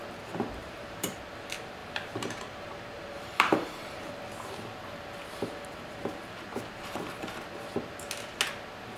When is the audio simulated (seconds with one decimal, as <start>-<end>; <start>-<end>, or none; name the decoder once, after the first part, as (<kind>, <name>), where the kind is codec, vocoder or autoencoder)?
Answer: 0.6-1.2 (vocoder, BigVGAN v2); 1.8-4.2; 6.5-7.1